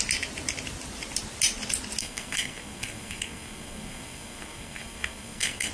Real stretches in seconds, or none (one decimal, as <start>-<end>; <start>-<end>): 0.0-2.0